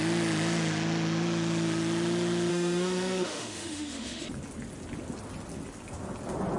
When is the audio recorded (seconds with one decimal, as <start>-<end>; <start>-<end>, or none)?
0.0-2.5; 4.2-6.6